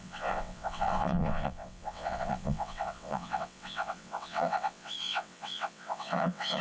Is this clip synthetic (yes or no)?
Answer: yes